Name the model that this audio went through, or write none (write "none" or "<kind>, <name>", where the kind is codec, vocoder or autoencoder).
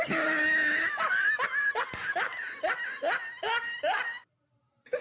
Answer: none